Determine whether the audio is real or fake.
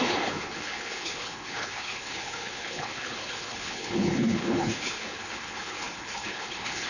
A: fake